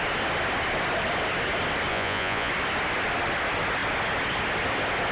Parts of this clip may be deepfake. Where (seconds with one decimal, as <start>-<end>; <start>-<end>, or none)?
1.9-2.5